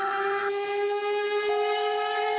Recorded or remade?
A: remade